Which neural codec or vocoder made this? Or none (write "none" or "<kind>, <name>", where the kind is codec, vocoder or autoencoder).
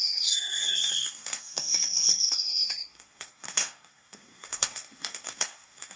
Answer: codec, SNAC